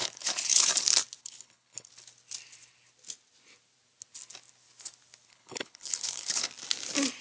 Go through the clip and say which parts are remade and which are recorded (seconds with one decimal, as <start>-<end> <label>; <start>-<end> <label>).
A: 0.0-0.7 remade; 0.7-1.2 recorded; 1.2-1.9 remade; 1.9-5.3 recorded; 5.3-6.5 remade; 6.5-7.2 recorded